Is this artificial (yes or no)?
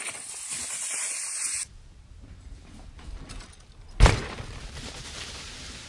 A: yes